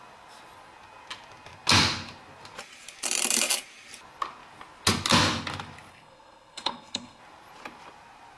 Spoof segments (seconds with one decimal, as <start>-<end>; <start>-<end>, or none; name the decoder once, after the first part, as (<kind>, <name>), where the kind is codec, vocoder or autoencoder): 5.9-7.2 (codec, SNAC)